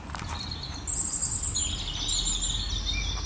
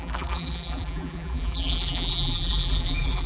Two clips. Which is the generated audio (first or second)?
second